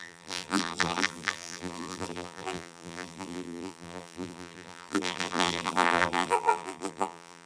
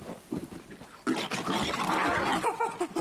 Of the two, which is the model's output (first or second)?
first